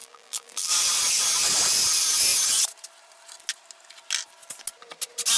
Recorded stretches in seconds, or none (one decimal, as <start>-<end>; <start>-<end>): 0.7-5.4

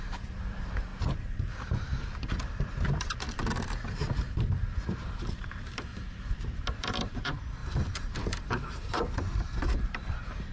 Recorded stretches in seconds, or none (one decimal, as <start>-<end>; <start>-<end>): 0.9-5.3; 5.9-6.8

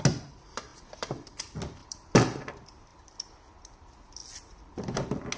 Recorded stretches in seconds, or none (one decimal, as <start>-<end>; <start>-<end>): 0.0-0.7; 1.4-1.8; 2.5-5.4

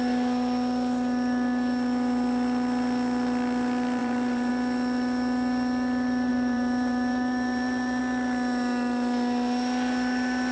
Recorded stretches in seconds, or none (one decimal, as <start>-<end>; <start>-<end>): 0.0-4.0; 4.5-6.3; 8.0-10.5

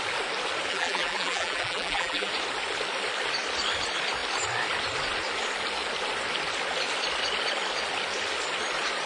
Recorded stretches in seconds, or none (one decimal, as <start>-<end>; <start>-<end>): 0.0-0.7; 2.3-9.1

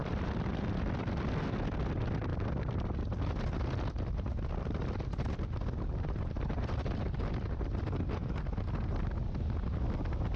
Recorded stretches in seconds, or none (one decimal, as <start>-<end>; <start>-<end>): 1.3-10.4